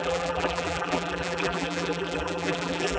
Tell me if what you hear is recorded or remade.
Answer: remade